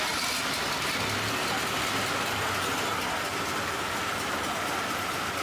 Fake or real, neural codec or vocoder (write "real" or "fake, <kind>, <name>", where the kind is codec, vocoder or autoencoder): real